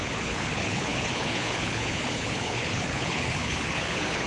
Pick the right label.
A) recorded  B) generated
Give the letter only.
B